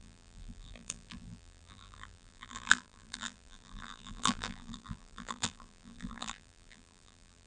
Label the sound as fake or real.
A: fake